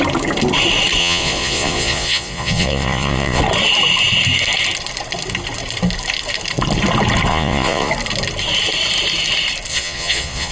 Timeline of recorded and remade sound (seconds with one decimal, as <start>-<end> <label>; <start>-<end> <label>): 0.0-1.0 recorded; 1.0-3.4 remade; 3.4-7.3 recorded; 7.3-7.9 remade; 7.9-9.7 recorded; 9.7-10.5 remade